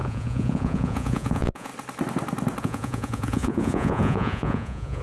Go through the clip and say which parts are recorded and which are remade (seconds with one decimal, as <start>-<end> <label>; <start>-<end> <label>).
0.0-1.7 remade; 1.7-2.6 recorded; 2.6-5.0 remade